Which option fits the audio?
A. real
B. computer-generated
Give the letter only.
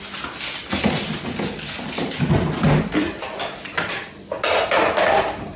A